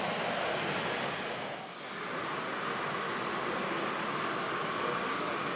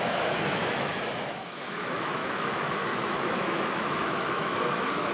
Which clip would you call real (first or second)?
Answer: first